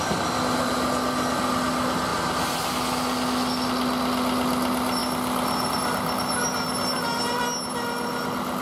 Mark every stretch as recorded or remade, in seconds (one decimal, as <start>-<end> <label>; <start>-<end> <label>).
0.0-8.6 recorded